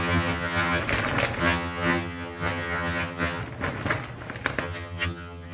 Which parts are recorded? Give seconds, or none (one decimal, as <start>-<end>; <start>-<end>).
0.8-1.4; 3.4-4.6